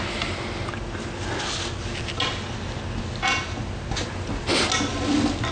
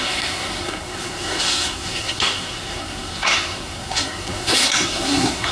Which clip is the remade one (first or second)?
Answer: second